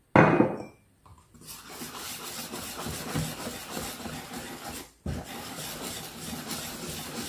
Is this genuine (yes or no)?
yes